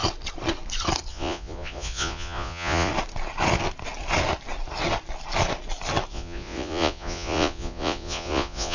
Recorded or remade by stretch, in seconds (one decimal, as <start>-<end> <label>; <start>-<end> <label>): 0.0-1.1 recorded; 1.1-2.9 remade; 2.9-6.1 recorded; 6.1-8.7 remade